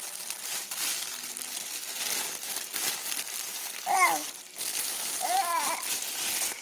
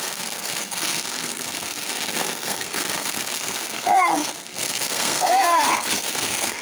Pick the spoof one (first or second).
second